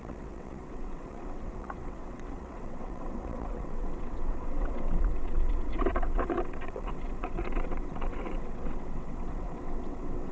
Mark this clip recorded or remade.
remade